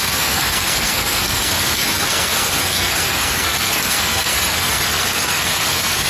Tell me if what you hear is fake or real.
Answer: fake